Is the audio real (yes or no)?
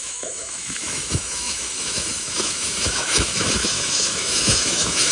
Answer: no